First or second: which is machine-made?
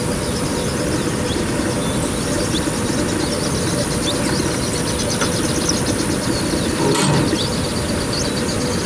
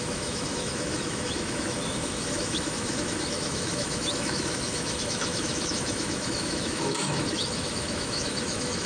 second